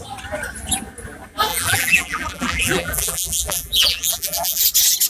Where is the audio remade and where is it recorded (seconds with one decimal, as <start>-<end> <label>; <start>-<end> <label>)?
0.0-1.5 recorded; 1.5-4.6 remade; 4.6-5.1 recorded